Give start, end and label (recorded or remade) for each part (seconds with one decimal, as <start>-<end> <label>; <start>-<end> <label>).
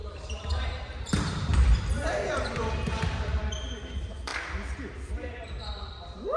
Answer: 0.0-4.3 remade; 4.3-5.1 recorded; 5.1-6.4 remade